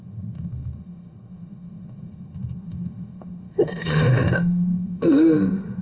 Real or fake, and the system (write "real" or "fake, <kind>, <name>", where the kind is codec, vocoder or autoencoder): fake, autoencoder, DAC-VAE